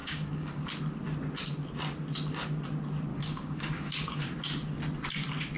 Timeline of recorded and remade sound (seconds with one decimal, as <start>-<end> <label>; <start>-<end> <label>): 0.0-0.6 remade; 0.6-3.1 recorded; 3.1-4.2 remade; 4.2-5.6 recorded